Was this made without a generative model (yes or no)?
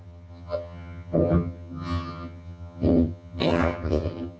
no